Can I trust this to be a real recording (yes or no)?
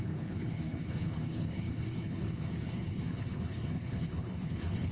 no